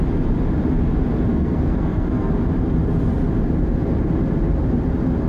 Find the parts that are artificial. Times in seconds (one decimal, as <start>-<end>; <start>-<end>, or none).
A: 1.3-2.3